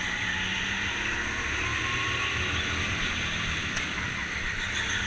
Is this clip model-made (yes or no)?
no